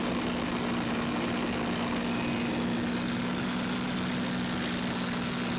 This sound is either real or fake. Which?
real